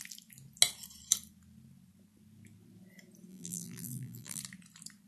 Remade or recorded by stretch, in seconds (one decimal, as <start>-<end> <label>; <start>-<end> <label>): 0.0-3.3 recorded; 3.3-4.4 remade; 4.4-5.1 recorded